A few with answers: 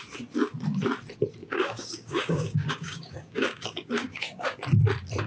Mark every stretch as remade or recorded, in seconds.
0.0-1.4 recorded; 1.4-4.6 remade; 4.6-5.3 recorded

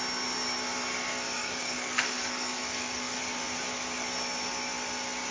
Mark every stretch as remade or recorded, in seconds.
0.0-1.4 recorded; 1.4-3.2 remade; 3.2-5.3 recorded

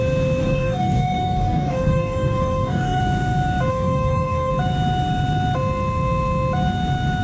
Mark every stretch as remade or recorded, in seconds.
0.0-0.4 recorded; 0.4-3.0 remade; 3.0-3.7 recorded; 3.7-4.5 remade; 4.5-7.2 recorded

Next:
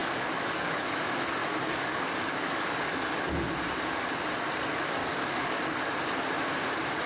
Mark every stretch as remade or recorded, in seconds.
0.0-1.0 remade; 1.0-1.4 recorded; 1.4-3.2 remade; 3.2-5.0 recorded; 5.0-5.9 remade; 5.9-7.1 recorded

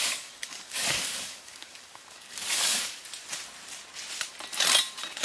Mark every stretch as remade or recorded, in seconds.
0.0-3.0 remade; 3.0-5.2 recorded

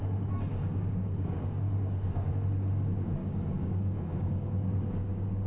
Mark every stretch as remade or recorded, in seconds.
0.0-0.5 recorded; 0.5-2.3 remade; 2.3-3.2 recorded; 3.2-5.5 remade